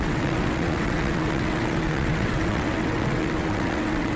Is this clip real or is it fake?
fake